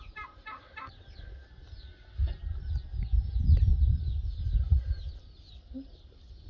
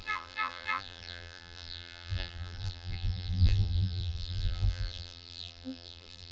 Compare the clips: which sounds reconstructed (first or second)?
second